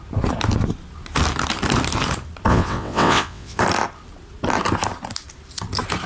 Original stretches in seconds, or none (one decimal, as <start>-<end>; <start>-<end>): 0.0-2.5; 3.6-6.1